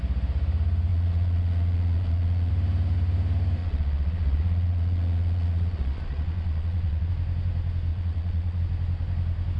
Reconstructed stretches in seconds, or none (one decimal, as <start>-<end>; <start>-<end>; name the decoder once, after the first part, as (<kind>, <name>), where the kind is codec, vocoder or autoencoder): 0.9-2.5 (vocoder, Vocos); 3.6-7.1; 7.9-8.6